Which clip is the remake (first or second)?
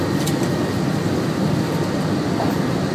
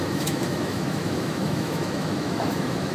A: second